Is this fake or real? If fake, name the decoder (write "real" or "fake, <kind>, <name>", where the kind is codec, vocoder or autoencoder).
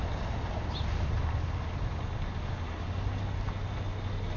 real